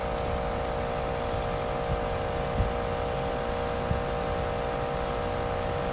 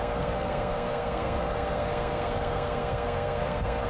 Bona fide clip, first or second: first